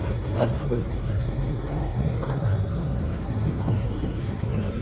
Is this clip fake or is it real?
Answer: fake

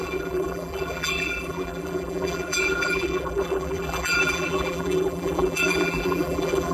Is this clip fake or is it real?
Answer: fake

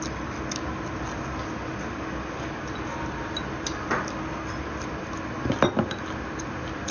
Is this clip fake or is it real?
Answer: real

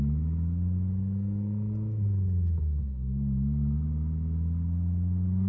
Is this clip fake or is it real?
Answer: real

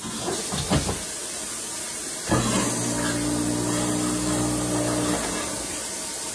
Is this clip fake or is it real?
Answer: real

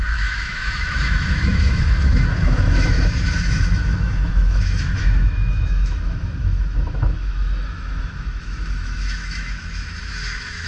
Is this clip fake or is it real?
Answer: fake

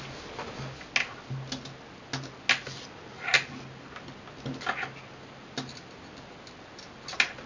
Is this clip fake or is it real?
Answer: real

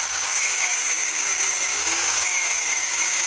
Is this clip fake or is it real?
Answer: fake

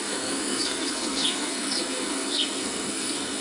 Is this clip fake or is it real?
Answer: fake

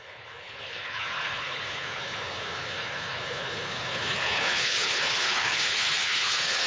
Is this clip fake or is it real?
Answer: fake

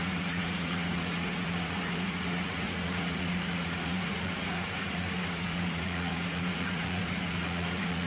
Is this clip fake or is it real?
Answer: fake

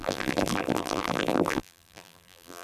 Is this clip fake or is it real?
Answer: fake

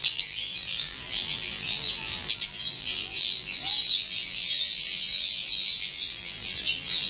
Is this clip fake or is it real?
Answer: fake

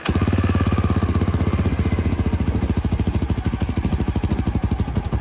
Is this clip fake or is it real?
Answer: real